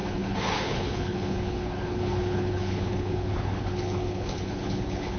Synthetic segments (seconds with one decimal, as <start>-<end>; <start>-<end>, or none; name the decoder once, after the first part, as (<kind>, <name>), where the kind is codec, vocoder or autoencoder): 0.0-5.2 (codec, HILCodec)